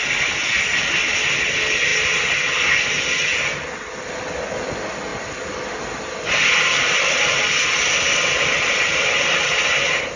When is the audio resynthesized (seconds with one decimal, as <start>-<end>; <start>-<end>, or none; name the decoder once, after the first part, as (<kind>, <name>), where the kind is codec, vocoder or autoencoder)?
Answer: none